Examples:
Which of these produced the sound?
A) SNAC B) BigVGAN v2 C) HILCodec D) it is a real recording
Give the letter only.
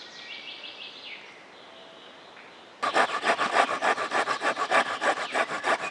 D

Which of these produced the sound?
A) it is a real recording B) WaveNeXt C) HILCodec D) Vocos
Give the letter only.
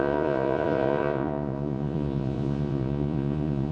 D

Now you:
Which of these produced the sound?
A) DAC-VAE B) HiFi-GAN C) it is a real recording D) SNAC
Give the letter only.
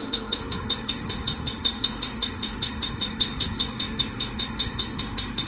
A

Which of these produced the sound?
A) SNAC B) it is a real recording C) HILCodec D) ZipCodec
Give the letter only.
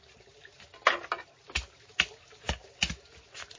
B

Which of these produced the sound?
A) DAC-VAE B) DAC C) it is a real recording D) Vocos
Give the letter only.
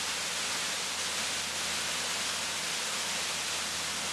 C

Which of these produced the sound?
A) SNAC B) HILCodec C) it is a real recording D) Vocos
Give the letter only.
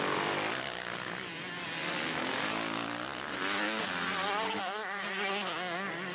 C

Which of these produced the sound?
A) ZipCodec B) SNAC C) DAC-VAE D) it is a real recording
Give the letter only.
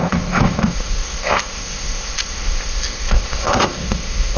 A